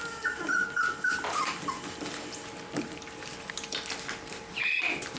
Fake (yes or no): no